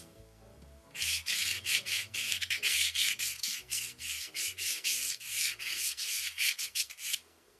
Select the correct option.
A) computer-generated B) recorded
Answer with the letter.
A